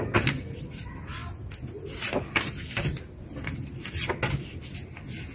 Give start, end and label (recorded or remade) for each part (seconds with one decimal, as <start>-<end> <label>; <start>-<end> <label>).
0.0-5.3 recorded